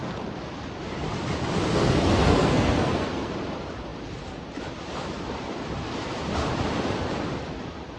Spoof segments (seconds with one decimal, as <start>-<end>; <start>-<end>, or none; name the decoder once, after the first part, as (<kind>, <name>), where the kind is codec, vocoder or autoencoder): 1.7-3.3 (codec, SNAC)